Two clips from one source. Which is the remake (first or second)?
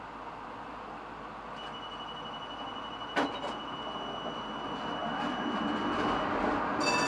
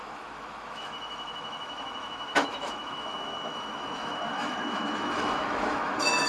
second